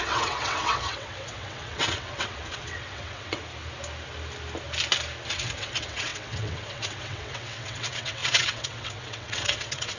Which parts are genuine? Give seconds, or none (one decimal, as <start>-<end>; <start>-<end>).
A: 3.4-5.3